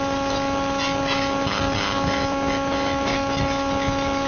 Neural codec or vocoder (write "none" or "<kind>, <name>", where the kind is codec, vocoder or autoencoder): none